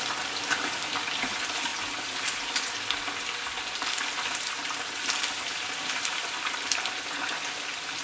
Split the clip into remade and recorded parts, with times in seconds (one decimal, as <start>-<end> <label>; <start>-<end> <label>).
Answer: 0.0-8.0 recorded